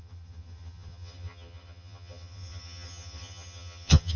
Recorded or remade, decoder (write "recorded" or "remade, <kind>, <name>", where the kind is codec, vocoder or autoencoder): remade, vocoder, HiFi-GAN